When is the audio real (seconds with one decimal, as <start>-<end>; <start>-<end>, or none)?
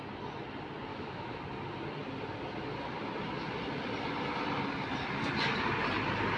0.0-0.9; 1.4-6.4